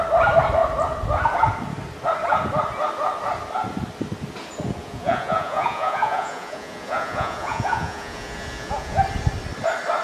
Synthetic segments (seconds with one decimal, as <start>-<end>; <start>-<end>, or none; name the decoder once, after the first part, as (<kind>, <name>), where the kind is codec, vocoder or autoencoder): 4.8-9.0 (vocoder, Vocos)